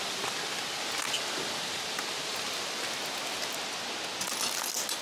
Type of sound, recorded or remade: recorded